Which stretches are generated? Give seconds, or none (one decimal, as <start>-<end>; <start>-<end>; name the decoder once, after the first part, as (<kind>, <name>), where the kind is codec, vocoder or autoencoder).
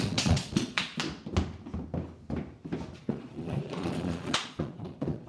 0.0-0.9 (vocoder, Vocos); 3.0-5.3